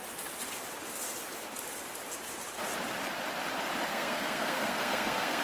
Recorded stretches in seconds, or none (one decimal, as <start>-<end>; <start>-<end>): 0.0-3.9